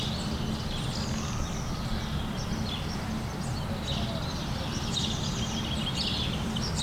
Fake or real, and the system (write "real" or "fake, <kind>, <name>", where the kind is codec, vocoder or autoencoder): real